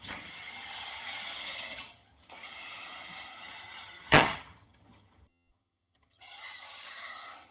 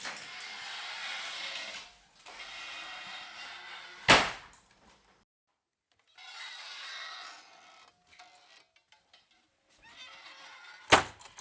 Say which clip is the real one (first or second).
second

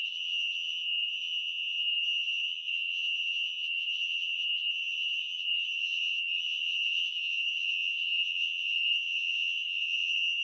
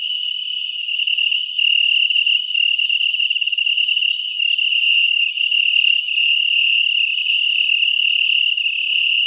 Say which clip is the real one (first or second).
second